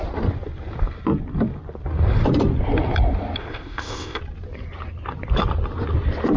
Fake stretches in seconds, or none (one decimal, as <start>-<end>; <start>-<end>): 3.4-4.2